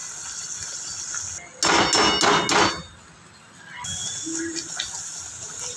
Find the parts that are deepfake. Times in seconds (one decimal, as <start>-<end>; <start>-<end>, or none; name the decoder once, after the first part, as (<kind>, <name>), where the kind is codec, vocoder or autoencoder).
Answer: none